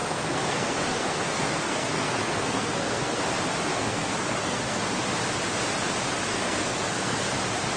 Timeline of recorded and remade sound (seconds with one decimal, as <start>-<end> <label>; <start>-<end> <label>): 0.0-3.2 remade; 3.2-3.7 recorded; 3.7-4.8 remade; 4.8-6.3 recorded; 6.3-7.3 remade; 7.3-7.8 recorded